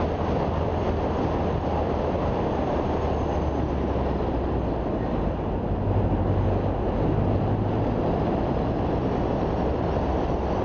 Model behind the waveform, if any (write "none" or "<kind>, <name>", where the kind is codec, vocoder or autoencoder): none